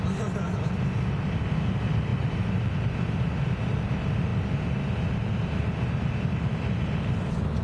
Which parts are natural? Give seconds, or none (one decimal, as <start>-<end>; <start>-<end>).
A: 0.0-7.6